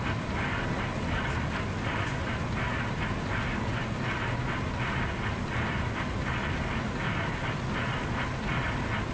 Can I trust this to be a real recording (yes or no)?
yes